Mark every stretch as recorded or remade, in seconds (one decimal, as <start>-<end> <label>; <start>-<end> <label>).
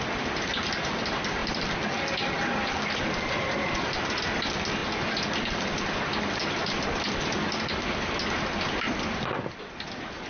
0.0-1.4 recorded; 1.4-4.2 remade; 4.2-4.8 recorded; 4.8-7.7 remade; 7.7-10.3 recorded